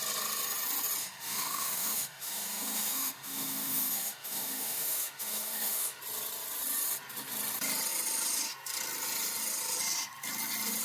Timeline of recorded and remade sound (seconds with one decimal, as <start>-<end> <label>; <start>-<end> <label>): 0.0-1.0 recorded; 1.0-6.0 remade; 6.0-10.8 recorded